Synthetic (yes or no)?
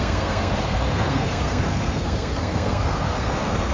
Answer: yes